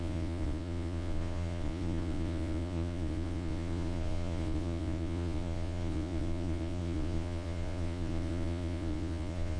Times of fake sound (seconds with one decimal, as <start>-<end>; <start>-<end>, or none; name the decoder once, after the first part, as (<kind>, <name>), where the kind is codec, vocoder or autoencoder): 0.0-9.6 (vocoder, Vocos)